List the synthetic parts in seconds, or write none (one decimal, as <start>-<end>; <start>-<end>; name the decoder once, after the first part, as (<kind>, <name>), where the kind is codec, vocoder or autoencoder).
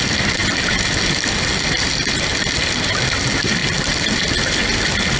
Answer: none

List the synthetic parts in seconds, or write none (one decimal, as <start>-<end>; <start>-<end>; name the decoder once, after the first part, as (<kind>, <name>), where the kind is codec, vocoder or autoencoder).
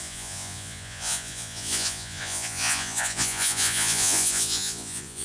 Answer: 0.0-5.2 (vocoder, Vocos)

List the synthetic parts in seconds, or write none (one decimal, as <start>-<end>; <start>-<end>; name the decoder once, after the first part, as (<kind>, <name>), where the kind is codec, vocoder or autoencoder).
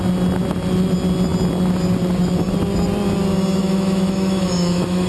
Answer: 3.6-5.1 (autoencoder, DAC-VAE)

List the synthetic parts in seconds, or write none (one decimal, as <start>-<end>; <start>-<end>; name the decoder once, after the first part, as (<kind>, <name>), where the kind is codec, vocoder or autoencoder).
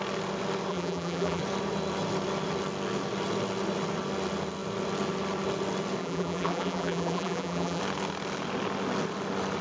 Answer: 0.7-1.4 (vocoder, BigVGAN v2); 6.0-7.8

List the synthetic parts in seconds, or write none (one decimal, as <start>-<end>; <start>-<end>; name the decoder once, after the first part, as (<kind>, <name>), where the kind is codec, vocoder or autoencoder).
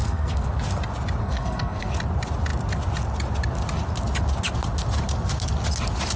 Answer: 0.0-0.5 (codec, SNAC); 1.2-1.9